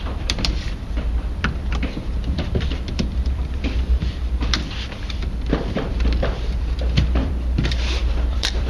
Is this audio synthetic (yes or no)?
yes